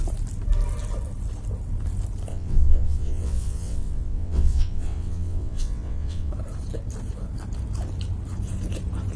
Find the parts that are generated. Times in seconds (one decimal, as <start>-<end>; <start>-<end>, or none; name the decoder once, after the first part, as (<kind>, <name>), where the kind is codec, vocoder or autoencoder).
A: 2.3-6.3 (vocoder, WaveNeXt)